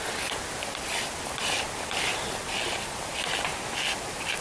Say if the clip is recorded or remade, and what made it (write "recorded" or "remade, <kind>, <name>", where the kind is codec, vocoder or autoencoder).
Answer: recorded